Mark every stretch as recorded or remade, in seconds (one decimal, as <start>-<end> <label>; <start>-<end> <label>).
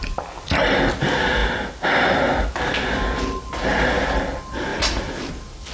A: 0.0-4.7 recorded; 4.7-5.3 remade; 5.3-5.7 recorded